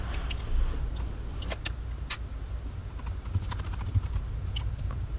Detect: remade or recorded recorded